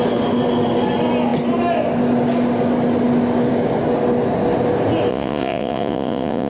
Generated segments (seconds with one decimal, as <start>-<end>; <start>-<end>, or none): 5.1-6.5